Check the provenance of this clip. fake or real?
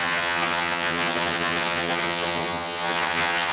fake